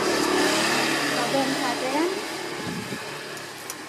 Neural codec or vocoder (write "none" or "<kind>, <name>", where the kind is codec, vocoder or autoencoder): none